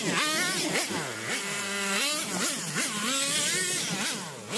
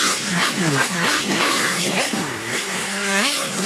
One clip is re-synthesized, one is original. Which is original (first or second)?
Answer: first